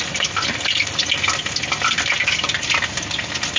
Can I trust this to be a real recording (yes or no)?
yes